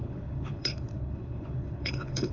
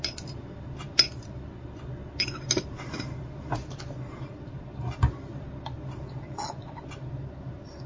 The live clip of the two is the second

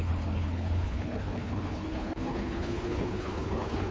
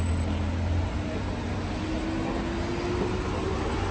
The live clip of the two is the second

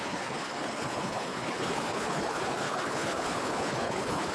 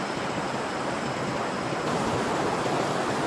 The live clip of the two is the second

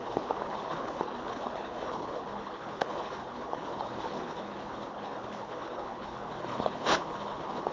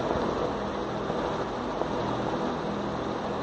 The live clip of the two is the second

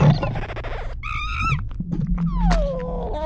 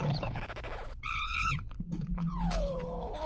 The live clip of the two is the first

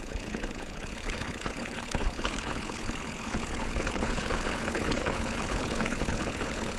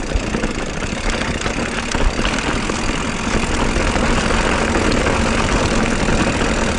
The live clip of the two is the second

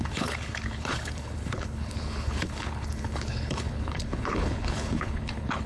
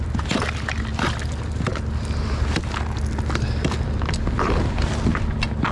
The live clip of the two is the second